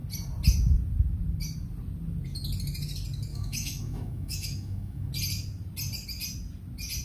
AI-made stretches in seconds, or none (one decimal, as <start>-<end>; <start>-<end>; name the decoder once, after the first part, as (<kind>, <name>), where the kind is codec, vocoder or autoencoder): 3.3-5.1 (autoencoder, DAC-VAE)